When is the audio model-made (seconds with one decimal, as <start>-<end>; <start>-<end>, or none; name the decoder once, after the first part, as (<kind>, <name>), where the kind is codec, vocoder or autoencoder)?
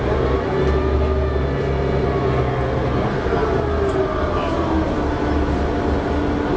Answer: none